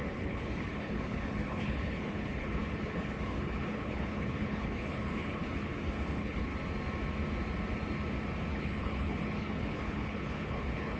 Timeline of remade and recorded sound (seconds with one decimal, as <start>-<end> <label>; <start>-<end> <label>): 0.0-6.5 remade; 6.5-8.5 recorded; 8.5-11.0 remade